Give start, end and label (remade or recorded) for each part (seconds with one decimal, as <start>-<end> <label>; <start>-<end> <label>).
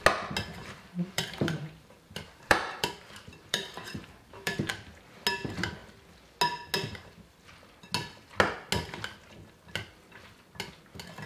0.0-0.6 recorded; 0.6-4.7 remade; 4.7-11.3 recorded